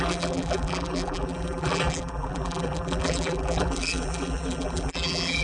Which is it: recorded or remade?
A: remade